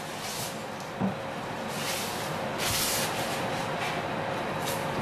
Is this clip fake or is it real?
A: real